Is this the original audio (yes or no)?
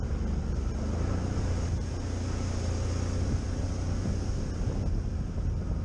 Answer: yes